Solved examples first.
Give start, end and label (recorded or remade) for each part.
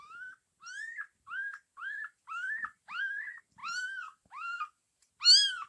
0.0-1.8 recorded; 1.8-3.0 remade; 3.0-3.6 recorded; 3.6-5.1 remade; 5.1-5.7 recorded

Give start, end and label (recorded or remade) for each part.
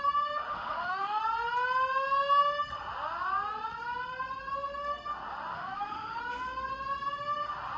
0.0-0.5 recorded; 0.5-1.2 remade; 1.2-5.5 recorded; 5.5-6.2 remade; 6.2-7.8 recorded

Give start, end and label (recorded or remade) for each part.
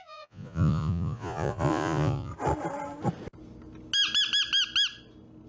0.0-2.3 remade; 2.3-5.5 recorded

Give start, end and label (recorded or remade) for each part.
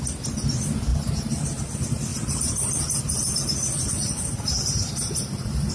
0.0-0.9 recorded; 0.9-1.6 remade; 1.6-2.1 recorded; 2.1-5.7 remade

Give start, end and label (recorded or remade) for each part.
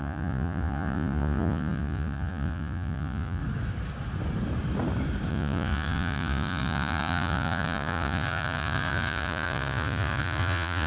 0.0-3.4 remade; 3.4-5.3 recorded; 5.3-10.9 remade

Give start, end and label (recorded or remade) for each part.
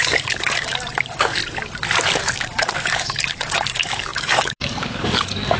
0.0-1.4 remade; 1.4-2.0 recorded; 2.0-5.6 remade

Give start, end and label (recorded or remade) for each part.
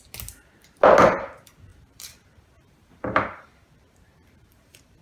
0.0-1.7 recorded; 1.7-5.0 remade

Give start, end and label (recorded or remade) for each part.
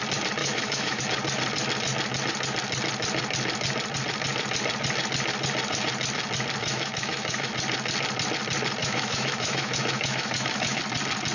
0.0-0.4 recorded; 0.4-1.0 remade; 1.0-6.6 recorded; 6.6-7.5 remade; 7.5-8.8 recorded; 8.8-10.8 remade; 10.8-11.3 recorded